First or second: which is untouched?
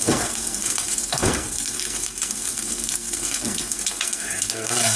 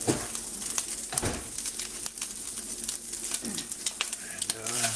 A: second